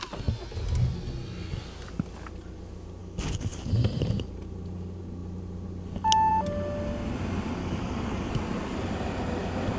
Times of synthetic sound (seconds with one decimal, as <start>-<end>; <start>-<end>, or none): 3.0-3.7; 7.6-8.3